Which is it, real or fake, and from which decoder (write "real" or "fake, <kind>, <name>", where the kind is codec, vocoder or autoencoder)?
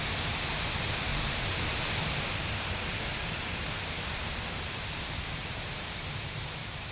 fake, vocoder, BigVGAN v2